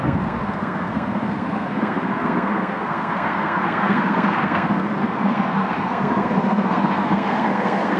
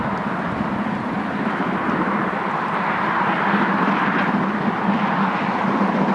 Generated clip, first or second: first